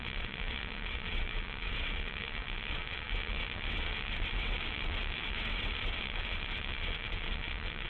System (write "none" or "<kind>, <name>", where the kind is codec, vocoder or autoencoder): vocoder, WaveNeXt